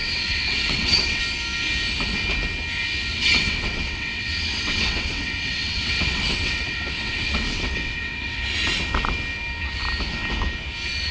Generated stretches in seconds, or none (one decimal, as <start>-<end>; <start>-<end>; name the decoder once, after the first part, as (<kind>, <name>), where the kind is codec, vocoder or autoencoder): 0.0-1.2 (vocoder, WaveNeXt); 3.1-8.4

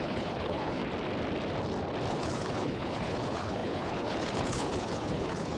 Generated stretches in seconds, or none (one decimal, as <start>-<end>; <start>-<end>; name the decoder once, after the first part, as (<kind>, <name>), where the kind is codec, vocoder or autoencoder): 0.0-0.8 (codec, HILCodec); 2.1-5.6